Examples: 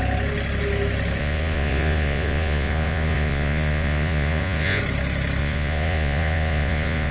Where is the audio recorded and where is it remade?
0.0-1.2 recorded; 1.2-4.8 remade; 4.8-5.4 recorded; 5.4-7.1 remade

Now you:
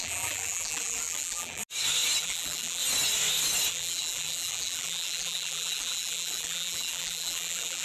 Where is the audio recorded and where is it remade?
0.0-1.6 remade; 1.6-2.2 recorded; 2.2-2.8 remade; 2.8-3.7 recorded; 3.7-7.8 remade

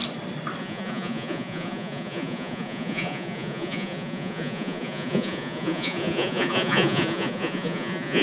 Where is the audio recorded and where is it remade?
0.0-0.6 recorded; 0.6-8.2 remade

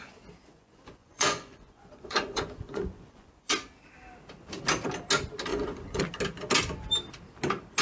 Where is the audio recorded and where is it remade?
0.0-0.5 recorded; 0.5-3.5 remade; 3.5-5.5 recorded; 5.5-6.0 remade; 6.0-7.8 recorded

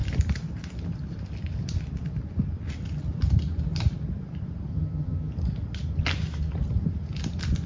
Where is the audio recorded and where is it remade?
0.0-4.7 recorded; 4.7-5.3 remade; 5.3-7.7 recorded

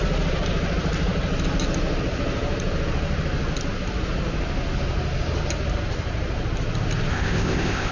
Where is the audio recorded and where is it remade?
0.0-7.1 recorded; 7.1-7.9 remade

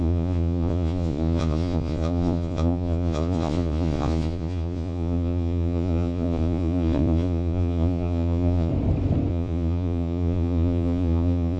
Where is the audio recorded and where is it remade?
0.0-8.7 remade; 8.7-9.3 recorded; 9.3-11.6 remade

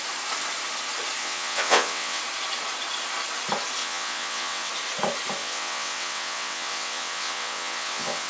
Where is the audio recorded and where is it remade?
0.0-1.2 recorded; 1.2-2.2 remade; 2.2-3.8 recorded; 3.8-4.7 remade; 4.7-5.4 recorded; 5.4-8.3 remade